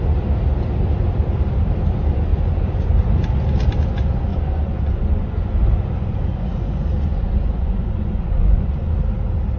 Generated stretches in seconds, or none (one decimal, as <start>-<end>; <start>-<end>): 2.3-3.1; 4.3-8.9